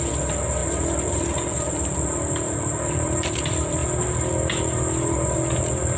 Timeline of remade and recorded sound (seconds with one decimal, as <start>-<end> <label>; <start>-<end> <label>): 0.0-6.0 recorded